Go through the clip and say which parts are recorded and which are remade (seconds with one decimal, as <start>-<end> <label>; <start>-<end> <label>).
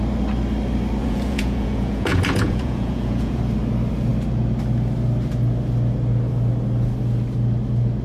0.0-1.0 recorded; 1.0-3.4 remade; 3.4-8.0 recorded